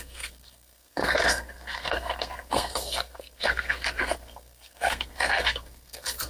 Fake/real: fake